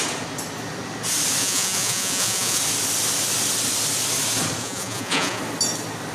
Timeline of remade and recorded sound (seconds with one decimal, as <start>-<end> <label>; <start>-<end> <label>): 0.0-1.4 recorded; 1.4-2.6 remade; 2.6-4.6 recorded; 4.6-5.4 remade; 5.4-6.1 recorded